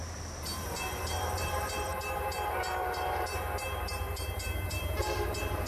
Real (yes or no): no